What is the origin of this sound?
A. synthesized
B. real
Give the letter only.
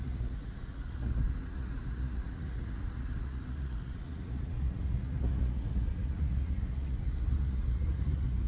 A